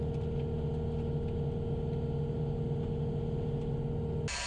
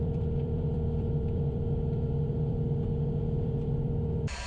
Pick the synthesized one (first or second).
second